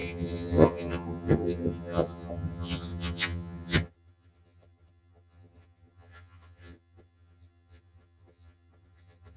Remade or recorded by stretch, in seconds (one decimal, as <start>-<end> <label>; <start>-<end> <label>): 0.0-9.4 remade